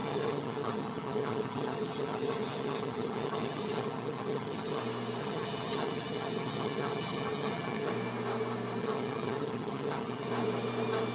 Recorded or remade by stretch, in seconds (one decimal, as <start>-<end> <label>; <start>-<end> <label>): 0.0-4.8 remade; 4.8-5.2 recorded; 5.2-7.9 remade; 7.9-8.8 recorded; 8.8-10.3 remade; 10.3-11.1 recorded